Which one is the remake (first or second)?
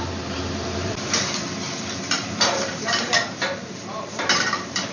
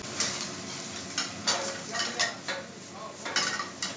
first